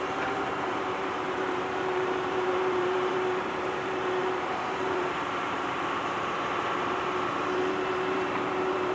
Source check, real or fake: fake